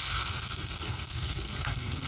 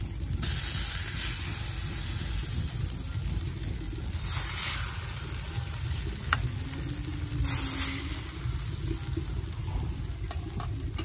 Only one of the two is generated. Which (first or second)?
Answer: first